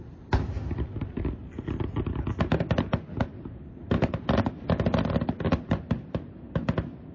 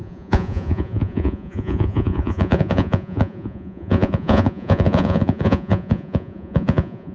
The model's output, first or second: second